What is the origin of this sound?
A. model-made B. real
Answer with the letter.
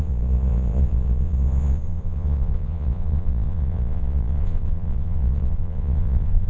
A